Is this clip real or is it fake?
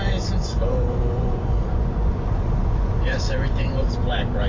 fake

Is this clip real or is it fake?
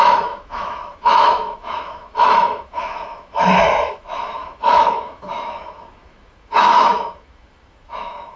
fake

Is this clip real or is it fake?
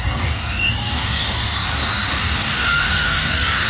fake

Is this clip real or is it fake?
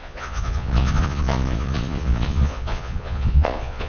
fake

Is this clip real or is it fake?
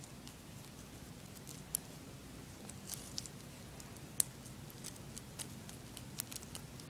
real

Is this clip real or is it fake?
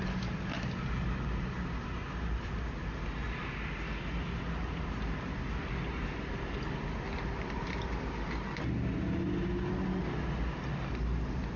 real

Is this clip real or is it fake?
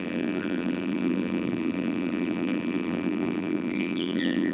fake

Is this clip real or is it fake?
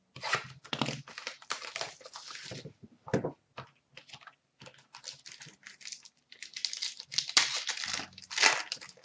real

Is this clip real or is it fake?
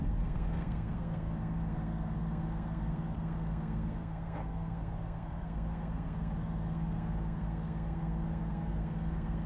fake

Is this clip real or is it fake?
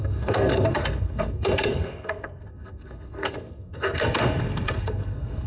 fake